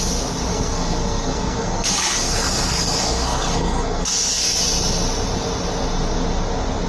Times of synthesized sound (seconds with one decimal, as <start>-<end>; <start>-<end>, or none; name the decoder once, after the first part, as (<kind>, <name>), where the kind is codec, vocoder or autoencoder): 0.5-4.6 (codec, SNAC)